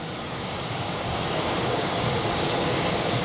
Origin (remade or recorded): remade